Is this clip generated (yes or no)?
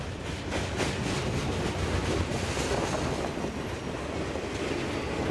no